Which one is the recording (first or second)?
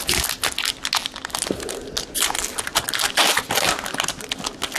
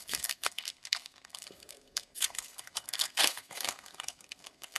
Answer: first